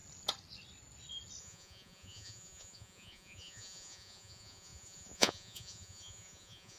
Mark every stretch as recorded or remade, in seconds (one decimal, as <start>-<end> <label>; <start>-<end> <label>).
0.0-1.4 recorded; 1.4-6.8 remade